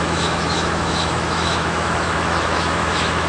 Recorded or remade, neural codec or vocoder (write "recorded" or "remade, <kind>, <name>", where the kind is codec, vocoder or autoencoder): remade, autoencoder, DAC-VAE